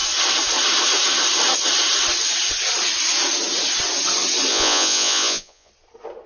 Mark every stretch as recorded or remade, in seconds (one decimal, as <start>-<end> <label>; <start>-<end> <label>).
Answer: 0.0-4.5 recorded; 4.5-5.7 remade; 5.7-6.3 recorded